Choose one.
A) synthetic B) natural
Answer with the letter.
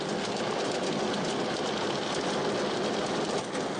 B